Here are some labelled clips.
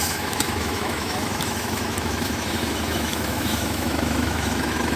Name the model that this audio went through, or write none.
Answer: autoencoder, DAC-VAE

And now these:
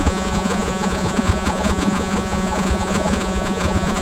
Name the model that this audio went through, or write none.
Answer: vocoder, Vocos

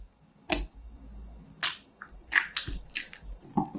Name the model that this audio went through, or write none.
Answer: none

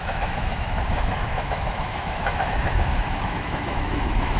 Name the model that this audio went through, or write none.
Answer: autoencoder, DAC-VAE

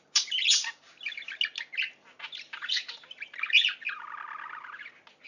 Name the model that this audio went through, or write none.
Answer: none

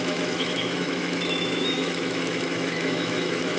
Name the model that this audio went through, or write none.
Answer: autoencoder, DAC-VAE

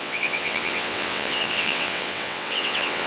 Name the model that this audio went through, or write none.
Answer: vocoder, WaveNeXt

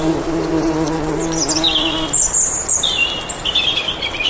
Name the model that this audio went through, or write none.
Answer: none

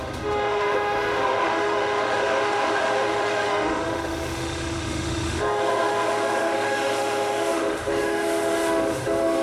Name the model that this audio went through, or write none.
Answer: autoencoder, DAC-VAE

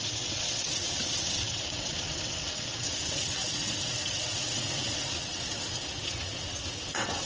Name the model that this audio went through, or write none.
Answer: vocoder, WaveNeXt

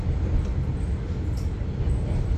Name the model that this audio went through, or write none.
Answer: none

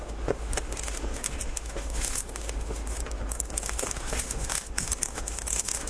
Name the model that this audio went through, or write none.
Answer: autoencoder, DAC-VAE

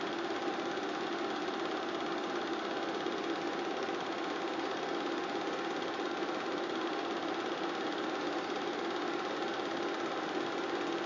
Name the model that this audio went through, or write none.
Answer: none